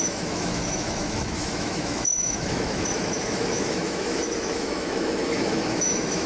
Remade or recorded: remade